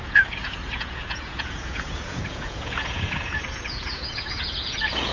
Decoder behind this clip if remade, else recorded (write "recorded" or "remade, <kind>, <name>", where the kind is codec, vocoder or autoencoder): remade, vocoder, Vocos